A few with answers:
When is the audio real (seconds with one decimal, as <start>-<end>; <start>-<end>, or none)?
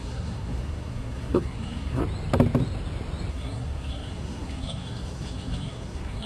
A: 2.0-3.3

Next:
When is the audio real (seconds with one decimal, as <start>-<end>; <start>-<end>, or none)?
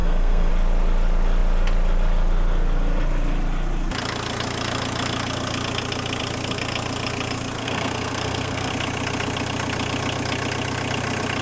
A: 0.5-7.6; 8.7-11.4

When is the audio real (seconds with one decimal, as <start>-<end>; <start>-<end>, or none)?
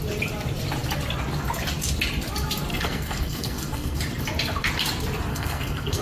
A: 0.0-2.7; 4.0-5.3